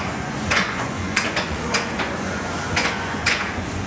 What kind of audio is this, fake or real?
fake